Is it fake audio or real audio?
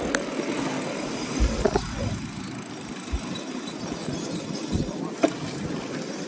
real